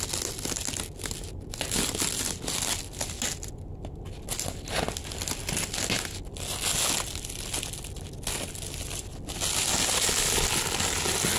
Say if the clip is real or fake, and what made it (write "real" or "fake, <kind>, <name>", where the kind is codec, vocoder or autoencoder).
real